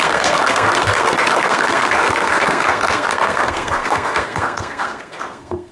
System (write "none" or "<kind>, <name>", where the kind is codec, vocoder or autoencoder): codec, SNAC